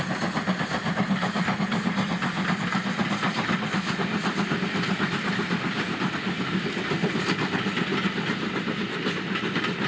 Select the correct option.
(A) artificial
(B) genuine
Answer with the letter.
B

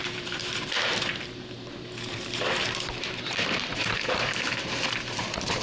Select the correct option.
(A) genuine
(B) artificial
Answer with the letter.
B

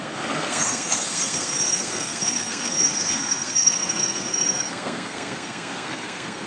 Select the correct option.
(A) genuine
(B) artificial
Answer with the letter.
B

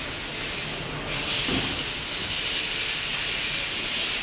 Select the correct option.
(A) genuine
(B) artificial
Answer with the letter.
A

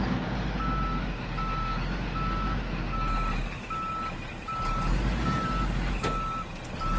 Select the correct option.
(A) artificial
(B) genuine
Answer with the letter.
B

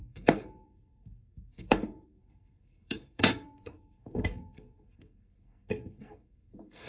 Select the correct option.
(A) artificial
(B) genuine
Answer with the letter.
A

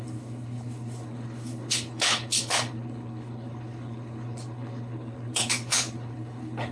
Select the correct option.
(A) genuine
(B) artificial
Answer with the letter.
B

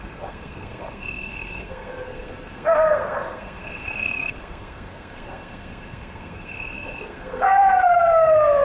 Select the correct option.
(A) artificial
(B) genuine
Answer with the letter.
A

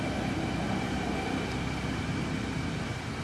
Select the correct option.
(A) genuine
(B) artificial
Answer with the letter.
A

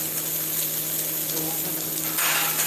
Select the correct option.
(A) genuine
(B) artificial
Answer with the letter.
A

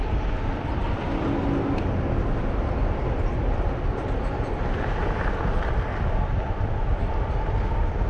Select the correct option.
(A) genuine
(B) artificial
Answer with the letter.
A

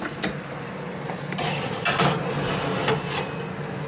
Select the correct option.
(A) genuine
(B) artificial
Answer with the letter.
A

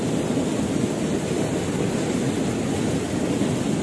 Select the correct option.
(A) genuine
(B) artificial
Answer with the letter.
A